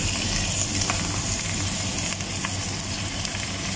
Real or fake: real